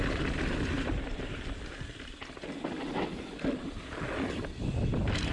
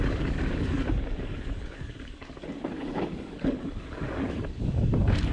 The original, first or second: first